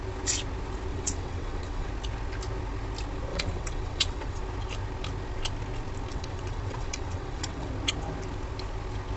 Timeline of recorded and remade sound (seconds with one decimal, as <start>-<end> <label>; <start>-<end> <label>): 0.0-0.9 recorded; 0.9-1.9 remade; 1.9-3.3 recorded; 3.3-4.4 remade; 4.4-6.1 recorded; 6.1-7.7 remade; 7.7-9.2 recorded